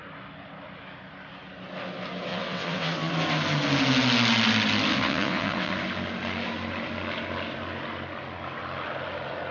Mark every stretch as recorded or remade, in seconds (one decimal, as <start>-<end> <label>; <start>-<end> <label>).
0.0-2.3 recorded; 2.3-3.1 remade; 3.1-4.9 recorded; 4.9-5.7 remade; 5.7-9.5 recorded